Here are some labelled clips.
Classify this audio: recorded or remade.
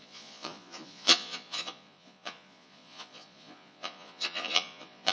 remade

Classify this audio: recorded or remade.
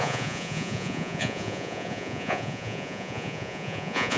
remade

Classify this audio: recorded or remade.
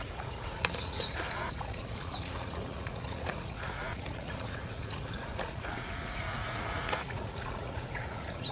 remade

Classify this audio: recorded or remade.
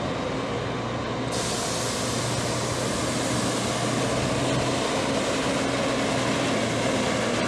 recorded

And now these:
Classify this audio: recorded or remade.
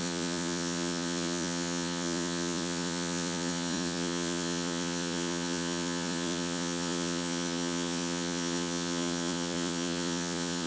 remade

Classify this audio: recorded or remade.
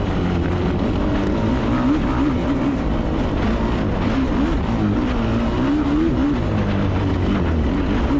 recorded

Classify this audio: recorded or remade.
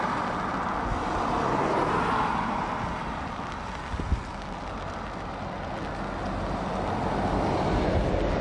recorded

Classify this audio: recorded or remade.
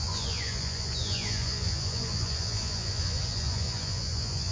remade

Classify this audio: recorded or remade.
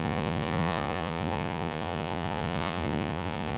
remade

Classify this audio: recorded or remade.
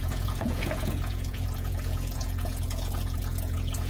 remade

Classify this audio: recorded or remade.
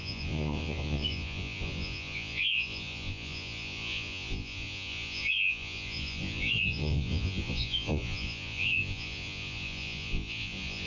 remade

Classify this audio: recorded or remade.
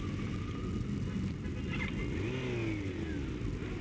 recorded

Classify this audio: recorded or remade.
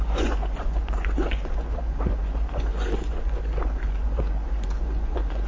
remade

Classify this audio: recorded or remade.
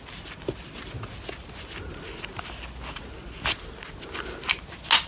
recorded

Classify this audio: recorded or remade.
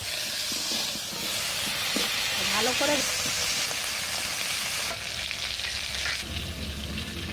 recorded